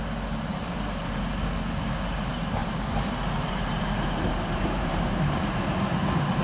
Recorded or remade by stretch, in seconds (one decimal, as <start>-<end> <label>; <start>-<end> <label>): 0.0-0.5 recorded; 0.5-1.2 remade; 1.2-2.6 recorded; 2.6-6.4 remade

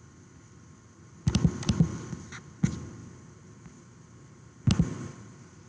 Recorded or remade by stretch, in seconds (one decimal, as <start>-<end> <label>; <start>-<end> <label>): 0.0-3.0 recorded; 3.0-5.7 remade